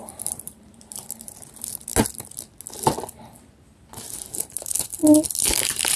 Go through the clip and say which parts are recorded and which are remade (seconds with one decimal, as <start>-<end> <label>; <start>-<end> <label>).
0.0-1.9 remade; 1.9-3.9 recorded; 3.9-5.0 remade; 5.0-5.6 recorded; 5.6-6.0 remade